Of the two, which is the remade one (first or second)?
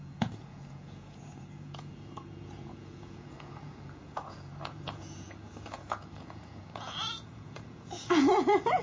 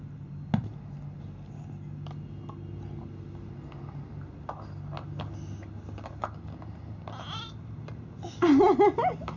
first